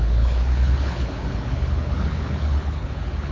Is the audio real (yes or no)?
no